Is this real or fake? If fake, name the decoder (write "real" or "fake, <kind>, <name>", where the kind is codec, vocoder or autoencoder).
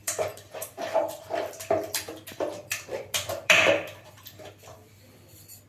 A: fake, vocoder, BigVGAN v2